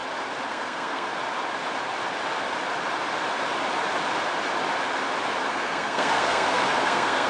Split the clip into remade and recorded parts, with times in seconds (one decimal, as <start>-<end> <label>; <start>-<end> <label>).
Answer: 0.0-0.5 recorded; 0.5-1.1 remade; 1.1-5.5 recorded; 5.5-7.3 remade